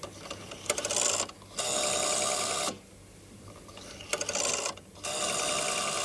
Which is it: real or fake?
real